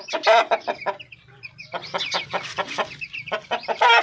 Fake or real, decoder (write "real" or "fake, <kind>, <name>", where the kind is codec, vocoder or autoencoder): real